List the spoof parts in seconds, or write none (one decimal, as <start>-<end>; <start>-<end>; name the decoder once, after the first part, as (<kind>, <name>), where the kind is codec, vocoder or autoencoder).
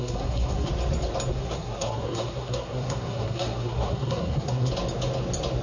0.0-0.7 (codec, SNAC); 1.3-4.7